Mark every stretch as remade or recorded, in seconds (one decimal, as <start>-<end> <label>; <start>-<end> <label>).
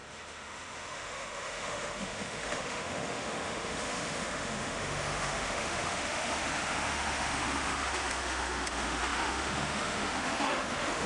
0.0-11.1 remade